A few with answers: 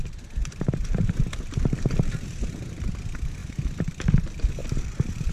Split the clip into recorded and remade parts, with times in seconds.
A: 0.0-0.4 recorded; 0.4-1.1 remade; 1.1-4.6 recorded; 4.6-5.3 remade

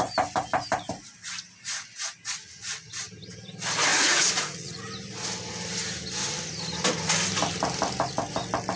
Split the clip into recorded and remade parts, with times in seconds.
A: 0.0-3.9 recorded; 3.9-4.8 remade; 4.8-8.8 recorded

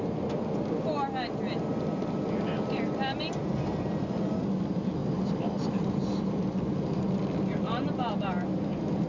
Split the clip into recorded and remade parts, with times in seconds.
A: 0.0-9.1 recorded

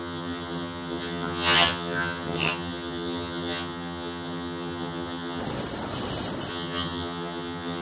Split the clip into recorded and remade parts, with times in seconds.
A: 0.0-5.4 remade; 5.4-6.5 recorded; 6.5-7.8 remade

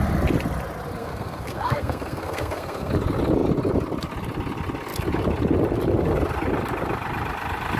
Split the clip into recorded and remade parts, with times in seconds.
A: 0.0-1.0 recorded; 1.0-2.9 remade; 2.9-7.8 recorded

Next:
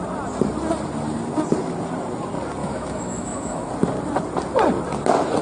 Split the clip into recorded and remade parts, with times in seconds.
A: 0.0-2.6 recorded; 2.6-3.7 remade; 3.7-5.4 recorded